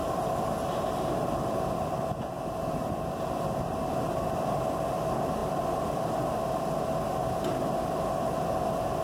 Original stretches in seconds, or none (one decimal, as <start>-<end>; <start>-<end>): 0.0-5.4; 7.1-9.0